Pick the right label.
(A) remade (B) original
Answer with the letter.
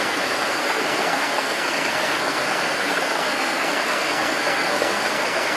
A